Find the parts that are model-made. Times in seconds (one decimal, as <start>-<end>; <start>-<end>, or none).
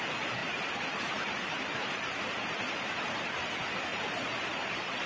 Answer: 0.4-3.5; 3.9-5.1